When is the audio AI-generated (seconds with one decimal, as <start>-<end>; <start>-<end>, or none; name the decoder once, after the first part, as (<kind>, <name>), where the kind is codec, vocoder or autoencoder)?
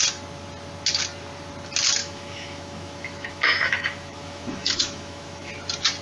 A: 2.0-5.5 (autoencoder, DAC-VAE)